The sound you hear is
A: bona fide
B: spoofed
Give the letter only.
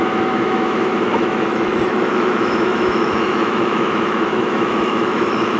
B